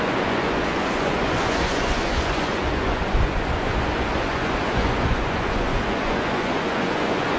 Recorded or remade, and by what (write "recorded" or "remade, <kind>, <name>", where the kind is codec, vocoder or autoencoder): remade, vocoder, Vocos